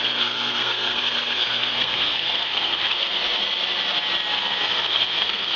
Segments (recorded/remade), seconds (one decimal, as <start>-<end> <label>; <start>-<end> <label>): 0.0-3.2 remade; 3.2-4.7 recorded; 4.7-5.6 remade

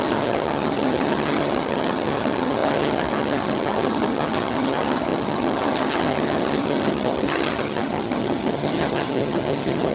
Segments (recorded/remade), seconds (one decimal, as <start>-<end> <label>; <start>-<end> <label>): 0.0-9.9 remade

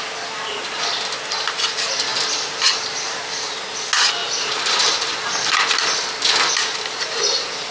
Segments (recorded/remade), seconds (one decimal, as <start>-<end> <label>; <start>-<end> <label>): 0.0-2.1 recorded; 2.1-3.2 remade; 3.2-4.2 recorded; 4.2-5.8 remade; 5.8-7.7 recorded

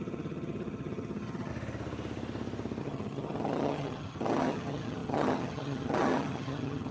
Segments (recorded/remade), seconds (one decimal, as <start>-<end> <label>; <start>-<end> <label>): 0.0-1.5 remade; 1.5-2.8 recorded; 2.8-6.9 remade

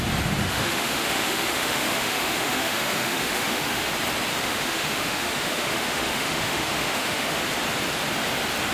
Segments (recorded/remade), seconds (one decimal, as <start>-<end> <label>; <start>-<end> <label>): 0.0-0.4 recorded; 0.4-3.9 remade; 3.9-4.3 recorded; 4.3-7.4 remade; 7.4-8.7 recorded

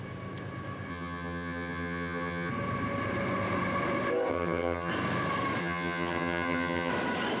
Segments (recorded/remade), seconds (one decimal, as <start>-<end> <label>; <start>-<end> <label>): 0.0-0.9 recorded; 0.9-2.5 remade; 2.5-4.3 recorded; 4.3-4.9 remade; 4.9-5.6 recorded; 5.6-6.9 remade; 6.9-7.4 recorded

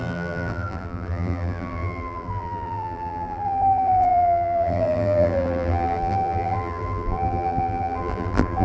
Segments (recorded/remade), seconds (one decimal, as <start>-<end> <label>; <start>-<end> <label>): 0.0-8.6 remade